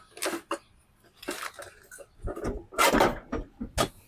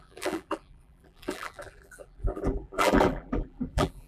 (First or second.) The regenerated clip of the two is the second